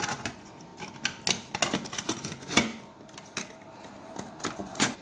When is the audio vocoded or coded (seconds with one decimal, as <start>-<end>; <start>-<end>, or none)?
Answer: 0.0-0.7; 1.9-2.7; 4.5-5.0